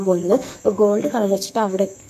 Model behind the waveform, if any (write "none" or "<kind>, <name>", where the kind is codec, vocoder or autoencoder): codec, SNAC